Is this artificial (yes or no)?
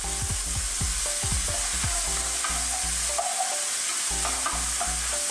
no